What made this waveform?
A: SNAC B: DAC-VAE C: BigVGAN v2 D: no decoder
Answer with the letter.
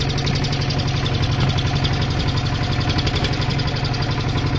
D